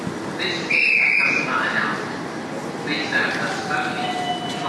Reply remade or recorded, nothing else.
recorded